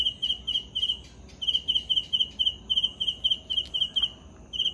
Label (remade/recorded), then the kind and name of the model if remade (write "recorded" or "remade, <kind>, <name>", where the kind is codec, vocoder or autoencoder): recorded